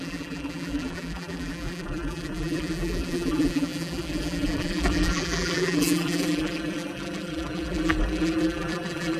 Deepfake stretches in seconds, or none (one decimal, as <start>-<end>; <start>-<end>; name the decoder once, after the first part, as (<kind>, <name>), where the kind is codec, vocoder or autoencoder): 0.0-9.2 (vocoder, BigVGAN v2)